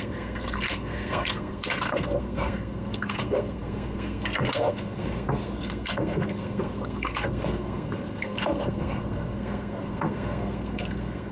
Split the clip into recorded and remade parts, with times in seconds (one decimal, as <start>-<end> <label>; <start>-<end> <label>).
0.0-11.3 remade